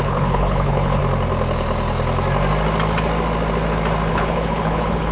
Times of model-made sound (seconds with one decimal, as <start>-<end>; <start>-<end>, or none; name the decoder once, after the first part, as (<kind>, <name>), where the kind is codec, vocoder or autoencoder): 0.0-1.0 (codec, HILCodec); 4.1-5.1